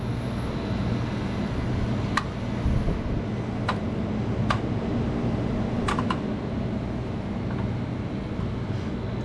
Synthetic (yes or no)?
no